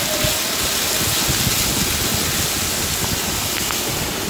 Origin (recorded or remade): recorded